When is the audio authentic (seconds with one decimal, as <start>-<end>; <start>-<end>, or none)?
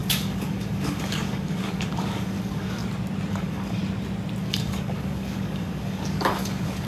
2.8-3.3; 3.8-4.4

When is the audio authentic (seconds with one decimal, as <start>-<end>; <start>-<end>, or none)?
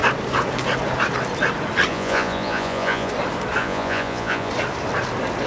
0.0-1.9; 3.1-3.6; 4.5-5.5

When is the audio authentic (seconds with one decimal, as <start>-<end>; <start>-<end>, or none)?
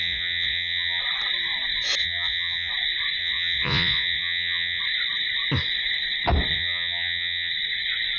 1.0-2.0; 2.7-3.2; 4.8-6.5; 7.5-8.2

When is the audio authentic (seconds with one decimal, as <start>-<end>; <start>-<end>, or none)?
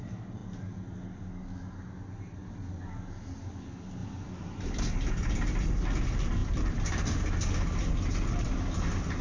0.0-4.0; 4.8-6.4; 7.2-9.2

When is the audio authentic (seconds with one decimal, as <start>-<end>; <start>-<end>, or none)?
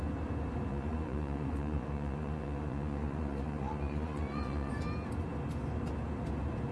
0.0-0.7; 4.7-6.7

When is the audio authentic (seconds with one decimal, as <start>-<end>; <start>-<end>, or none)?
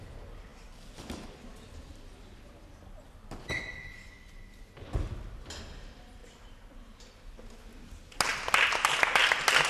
0.0-6.2; 7.2-9.7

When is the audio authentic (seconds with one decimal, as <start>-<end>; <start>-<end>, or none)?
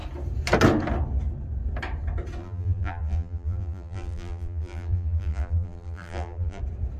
0.0-2.4; 6.6-7.0